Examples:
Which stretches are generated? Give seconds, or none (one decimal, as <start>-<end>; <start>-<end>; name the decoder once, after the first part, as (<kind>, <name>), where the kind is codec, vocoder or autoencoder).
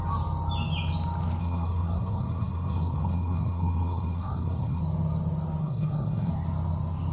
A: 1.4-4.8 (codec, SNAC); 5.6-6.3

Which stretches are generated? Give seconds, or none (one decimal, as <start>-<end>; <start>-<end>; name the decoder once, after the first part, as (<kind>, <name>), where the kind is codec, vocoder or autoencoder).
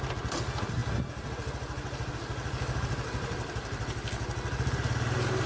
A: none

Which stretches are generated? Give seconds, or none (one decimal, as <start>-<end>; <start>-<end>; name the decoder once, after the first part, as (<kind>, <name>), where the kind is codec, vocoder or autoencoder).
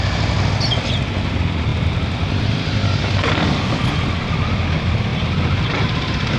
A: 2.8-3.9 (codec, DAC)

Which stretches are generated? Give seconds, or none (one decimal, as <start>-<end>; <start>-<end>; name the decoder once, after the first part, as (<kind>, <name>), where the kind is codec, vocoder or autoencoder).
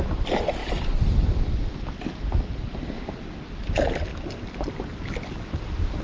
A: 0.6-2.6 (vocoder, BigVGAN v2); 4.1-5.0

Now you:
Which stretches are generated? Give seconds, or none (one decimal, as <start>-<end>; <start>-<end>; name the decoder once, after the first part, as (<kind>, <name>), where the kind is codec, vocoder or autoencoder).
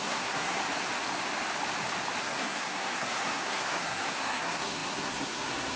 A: 0.0-0.6 (codec, SNAC); 2.2-5.8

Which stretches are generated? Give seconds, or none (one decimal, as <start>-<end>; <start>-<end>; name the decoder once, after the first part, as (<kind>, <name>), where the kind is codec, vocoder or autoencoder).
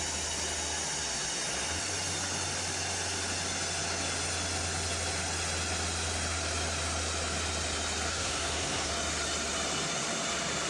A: 8.1-8.9 (codec, SNAC)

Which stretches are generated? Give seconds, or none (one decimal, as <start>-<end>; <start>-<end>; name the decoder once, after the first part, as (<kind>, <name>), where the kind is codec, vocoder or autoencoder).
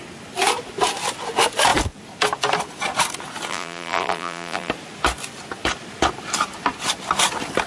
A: 3.5-4.7 (vocoder, BigVGAN v2)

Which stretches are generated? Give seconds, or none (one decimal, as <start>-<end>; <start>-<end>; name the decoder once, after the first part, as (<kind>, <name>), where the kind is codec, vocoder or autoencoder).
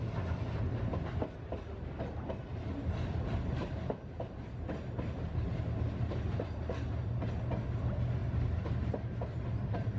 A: none